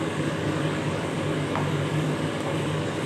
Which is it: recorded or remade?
remade